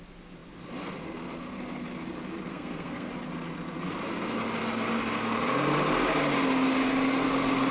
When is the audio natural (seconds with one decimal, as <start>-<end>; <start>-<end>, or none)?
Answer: 0.0-2.5; 3.1-7.7